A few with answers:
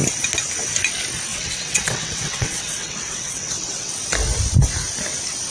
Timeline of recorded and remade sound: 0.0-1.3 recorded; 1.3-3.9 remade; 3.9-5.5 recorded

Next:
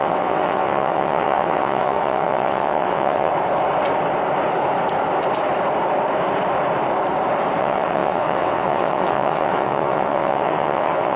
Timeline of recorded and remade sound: 0.0-3.3 remade; 3.3-7.6 recorded; 7.6-11.2 remade

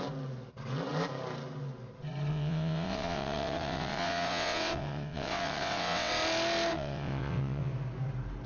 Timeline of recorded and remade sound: 0.0-2.3 recorded; 2.3-6.1 remade; 6.1-6.7 recorded; 6.7-7.7 remade; 7.7-8.5 recorded

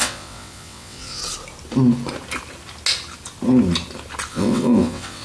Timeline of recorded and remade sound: 0.0-1.2 remade; 1.2-4.3 recorded; 4.3-5.2 remade

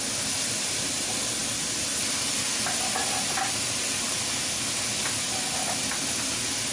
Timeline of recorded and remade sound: 0.0-6.7 recorded

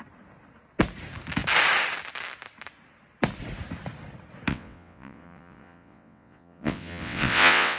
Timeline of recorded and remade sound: 0.0-4.5 recorded; 4.5-7.8 remade

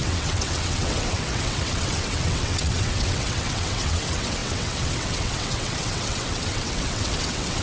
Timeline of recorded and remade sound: 0.0-7.6 remade